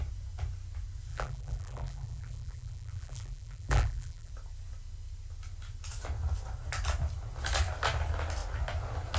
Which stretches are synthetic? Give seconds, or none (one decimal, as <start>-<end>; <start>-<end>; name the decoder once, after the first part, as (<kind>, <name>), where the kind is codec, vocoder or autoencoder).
1.1-4.3 (vocoder, BigVGAN v2)